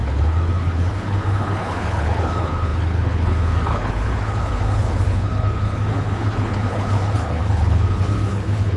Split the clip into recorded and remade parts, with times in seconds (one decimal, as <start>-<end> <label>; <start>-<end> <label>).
0.0-8.8 remade